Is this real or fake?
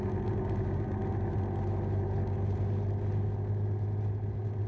real